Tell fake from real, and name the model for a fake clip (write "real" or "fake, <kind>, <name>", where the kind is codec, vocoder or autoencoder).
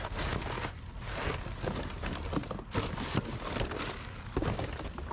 real